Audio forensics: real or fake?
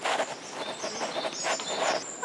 real